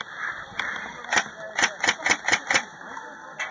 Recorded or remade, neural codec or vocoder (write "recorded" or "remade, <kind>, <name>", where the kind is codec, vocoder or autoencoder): recorded